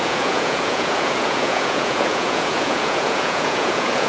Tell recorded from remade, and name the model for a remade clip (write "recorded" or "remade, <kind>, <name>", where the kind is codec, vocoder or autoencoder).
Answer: remade, vocoder, Vocos